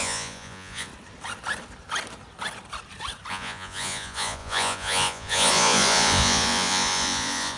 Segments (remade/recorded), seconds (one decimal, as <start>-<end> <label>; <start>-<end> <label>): 0.0-0.9 remade; 0.9-3.3 recorded; 3.3-7.6 remade